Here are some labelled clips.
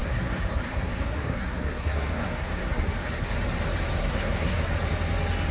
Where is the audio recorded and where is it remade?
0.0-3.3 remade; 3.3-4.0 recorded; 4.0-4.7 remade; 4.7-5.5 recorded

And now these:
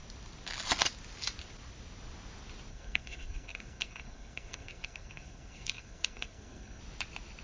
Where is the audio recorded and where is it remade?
0.0-2.7 recorded; 2.7-6.8 remade; 6.8-7.4 recorded

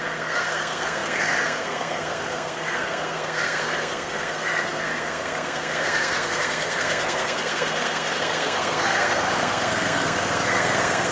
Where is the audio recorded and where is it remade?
0.0-11.1 remade